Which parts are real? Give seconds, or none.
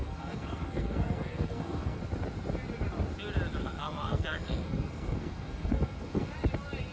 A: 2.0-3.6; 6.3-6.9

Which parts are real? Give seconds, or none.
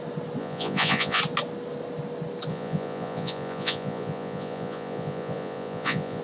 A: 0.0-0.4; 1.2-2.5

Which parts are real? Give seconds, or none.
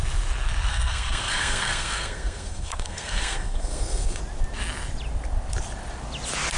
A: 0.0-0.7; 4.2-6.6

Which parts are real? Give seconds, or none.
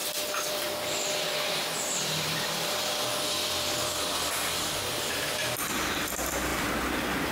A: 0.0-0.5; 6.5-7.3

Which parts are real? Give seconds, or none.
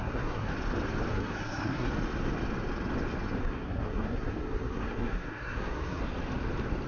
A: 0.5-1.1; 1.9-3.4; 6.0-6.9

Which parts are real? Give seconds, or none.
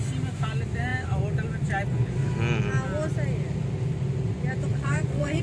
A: 0.0-4.7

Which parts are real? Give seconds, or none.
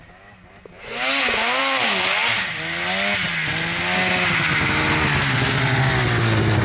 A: 0.0-6.6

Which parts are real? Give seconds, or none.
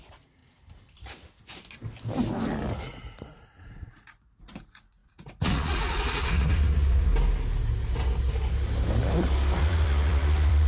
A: 0.4-2.8; 7.1-9.6